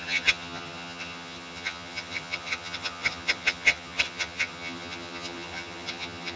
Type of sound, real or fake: fake